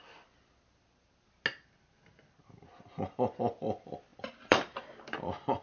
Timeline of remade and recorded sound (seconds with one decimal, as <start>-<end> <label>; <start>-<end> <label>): 0.0-4.1 recorded; 4.1-5.6 remade